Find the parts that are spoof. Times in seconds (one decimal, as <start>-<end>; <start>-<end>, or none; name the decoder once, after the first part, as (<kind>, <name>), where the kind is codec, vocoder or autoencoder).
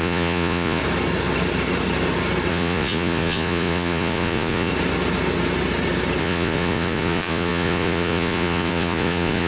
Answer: 0.0-0.8 (vocoder, Vocos); 2.5-4.7; 6.2-9.5